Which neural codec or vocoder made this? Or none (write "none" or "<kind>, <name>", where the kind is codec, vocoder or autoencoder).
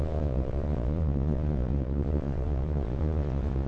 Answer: vocoder, Vocos